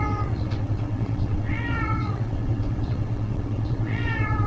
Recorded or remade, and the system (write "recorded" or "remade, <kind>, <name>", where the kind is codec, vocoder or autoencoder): remade, vocoder, WaveNeXt